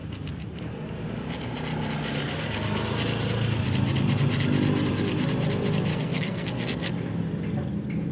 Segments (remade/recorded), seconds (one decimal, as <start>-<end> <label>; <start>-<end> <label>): 0.0-5.9 recorded; 5.9-6.9 remade; 6.9-8.1 recorded